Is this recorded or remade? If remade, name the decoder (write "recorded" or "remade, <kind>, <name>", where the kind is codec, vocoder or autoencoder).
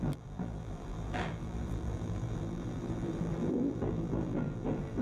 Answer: remade, vocoder, BigVGAN v2